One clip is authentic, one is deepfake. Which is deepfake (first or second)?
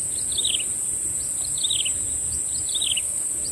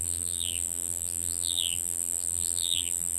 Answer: second